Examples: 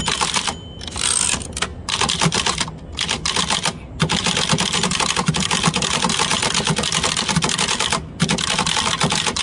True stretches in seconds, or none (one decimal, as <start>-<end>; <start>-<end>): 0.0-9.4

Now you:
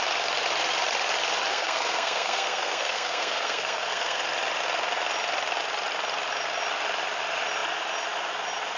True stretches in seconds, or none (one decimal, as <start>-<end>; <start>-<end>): 0.0-1.5; 4.2-8.8

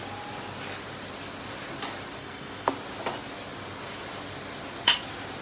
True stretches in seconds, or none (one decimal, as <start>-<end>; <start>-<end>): 0.0-2.2; 2.7-5.4